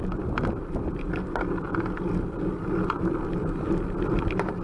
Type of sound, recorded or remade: recorded